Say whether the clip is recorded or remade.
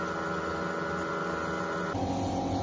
recorded